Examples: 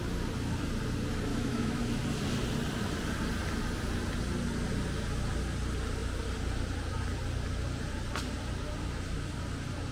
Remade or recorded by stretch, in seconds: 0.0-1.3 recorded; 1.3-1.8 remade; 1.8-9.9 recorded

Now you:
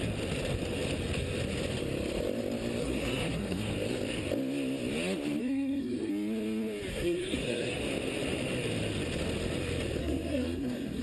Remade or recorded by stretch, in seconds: 0.0-2.8 recorded; 2.8-3.7 remade; 3.7-5.4 recorded; 5.4-6.1 remade; 6.1-6.9 recorded; 6.9-7.8 remade; 7.8-10.0 recorded; 10.0-11.0 remade